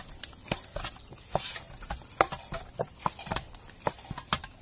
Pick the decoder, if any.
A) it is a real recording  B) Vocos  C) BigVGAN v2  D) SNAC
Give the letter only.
A